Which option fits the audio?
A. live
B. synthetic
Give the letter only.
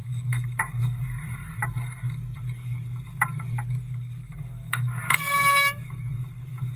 B